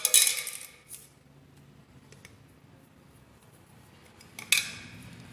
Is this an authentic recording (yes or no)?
yes